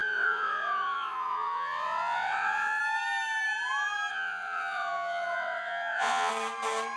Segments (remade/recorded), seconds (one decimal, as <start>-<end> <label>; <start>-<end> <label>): 0.0-2.8 remade; 2.8-4.1 recorded; 4.1-6.3 remade; 6.3-7.0 recorded